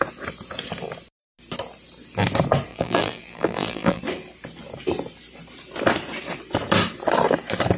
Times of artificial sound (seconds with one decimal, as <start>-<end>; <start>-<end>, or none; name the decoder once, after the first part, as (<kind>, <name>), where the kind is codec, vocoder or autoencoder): 2.7-4.0 (vocoder, BigVGAN v2)